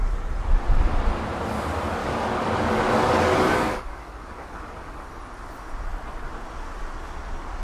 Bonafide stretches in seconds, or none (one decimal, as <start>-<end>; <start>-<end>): 0.0-2.0; 5.1-7.6